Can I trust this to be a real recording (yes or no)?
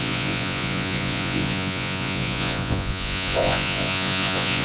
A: no